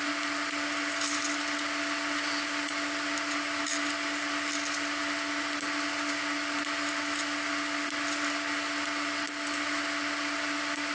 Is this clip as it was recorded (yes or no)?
yes